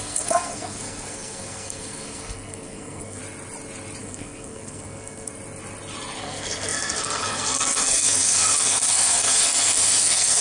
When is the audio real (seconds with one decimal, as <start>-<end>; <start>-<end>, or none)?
3.2-4.0; 5.3-6.2